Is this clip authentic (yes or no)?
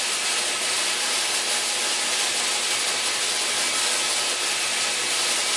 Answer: yes